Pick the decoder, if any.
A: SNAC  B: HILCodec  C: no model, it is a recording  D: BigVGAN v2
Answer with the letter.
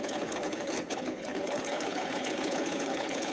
B